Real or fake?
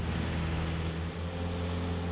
real